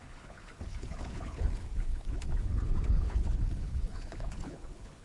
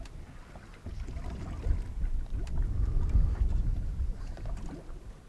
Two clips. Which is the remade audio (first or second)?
first